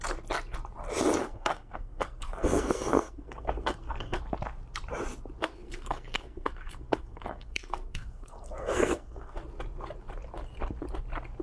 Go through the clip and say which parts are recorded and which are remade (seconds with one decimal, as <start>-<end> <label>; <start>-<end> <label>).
0.0-1.2 recorded; 1.2-4.2 remade; 4.2-5.4 recorded; 5.4-9.4 remade; 9.4-11.4 recorded